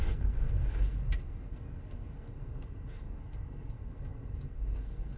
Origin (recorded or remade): remade